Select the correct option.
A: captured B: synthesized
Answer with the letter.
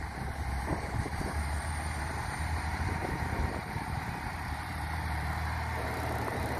B